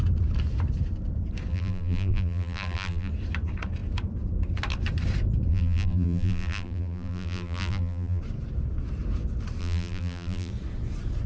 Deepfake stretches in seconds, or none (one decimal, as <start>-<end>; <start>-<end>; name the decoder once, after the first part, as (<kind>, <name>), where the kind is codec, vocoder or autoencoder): 1.5-3.1 (vocoder, BigVGAN v2); 5.5-8.2; 9.6-10.5